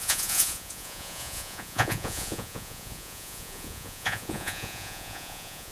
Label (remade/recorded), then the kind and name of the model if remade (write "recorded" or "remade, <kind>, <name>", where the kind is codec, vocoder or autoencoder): remade, vocoder, Vocos